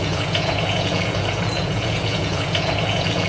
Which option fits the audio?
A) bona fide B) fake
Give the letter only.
B